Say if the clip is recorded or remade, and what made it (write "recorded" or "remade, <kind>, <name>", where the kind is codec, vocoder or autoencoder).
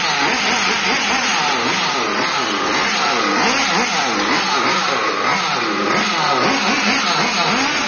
recorded